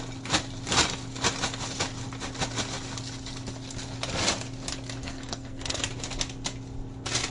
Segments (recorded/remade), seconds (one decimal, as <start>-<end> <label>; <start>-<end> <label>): 0.0-5.0 recorded; 5.0-5.8 remade; 5.8-7.3 recorded